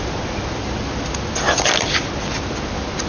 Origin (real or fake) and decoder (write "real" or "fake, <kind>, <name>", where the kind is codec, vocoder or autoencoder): real